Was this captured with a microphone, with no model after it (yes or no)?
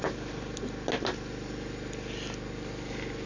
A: yes